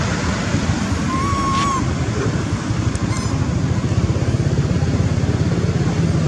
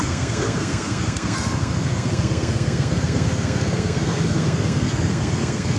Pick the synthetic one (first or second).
second